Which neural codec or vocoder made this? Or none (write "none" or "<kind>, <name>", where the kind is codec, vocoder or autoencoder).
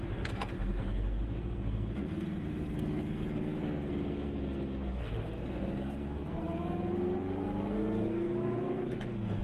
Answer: codec, SNAC